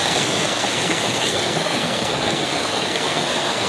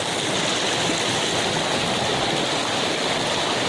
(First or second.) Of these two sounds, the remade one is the first